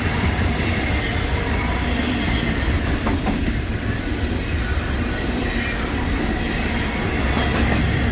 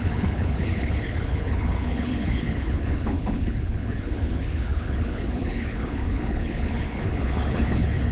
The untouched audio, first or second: first